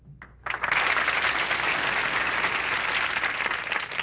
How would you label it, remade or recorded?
recorded